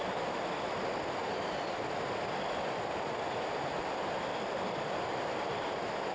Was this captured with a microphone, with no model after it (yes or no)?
yes